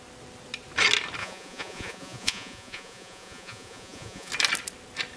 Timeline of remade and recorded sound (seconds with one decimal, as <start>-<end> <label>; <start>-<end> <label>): 0.0-1.2 recorded; 1.2-4.3 remade; 4.3-5.2 recorded